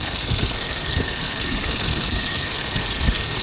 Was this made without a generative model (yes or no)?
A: no